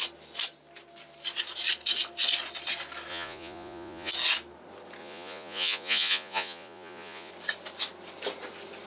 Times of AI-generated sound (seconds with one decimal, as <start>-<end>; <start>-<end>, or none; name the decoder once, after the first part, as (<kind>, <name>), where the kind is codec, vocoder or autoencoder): 3.1-4.1 (vocoder, Vocos); 5.0-7.3

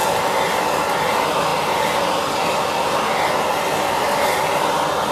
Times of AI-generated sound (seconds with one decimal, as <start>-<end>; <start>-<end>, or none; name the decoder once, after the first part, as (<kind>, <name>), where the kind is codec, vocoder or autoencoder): 0.7-1.5 (vocoder, BigVGAN v2); 3.8-5.1

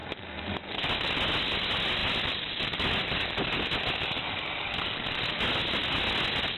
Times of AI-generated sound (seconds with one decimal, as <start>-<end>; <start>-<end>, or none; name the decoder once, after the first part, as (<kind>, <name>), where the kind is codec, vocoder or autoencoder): none

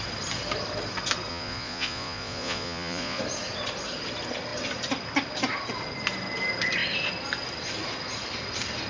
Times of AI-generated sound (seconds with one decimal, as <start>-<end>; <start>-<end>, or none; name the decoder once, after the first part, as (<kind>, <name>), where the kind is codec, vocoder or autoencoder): 1.3-3.2 (vocoder, Vocos)

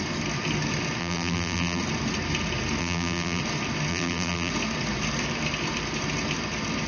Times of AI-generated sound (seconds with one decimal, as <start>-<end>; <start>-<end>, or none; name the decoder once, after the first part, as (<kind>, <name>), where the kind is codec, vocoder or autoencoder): 1.0-1.8 (vocoder, BigVGAN v2); 2.8-3.4; 3.9-4.5

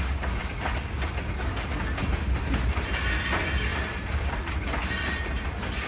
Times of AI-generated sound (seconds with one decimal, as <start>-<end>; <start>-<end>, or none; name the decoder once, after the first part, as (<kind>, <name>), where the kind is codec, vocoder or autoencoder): 2.0-3.0 (vocoder, BigVGAN v2); 3.7-4.9